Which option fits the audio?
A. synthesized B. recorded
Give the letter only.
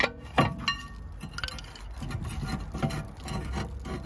B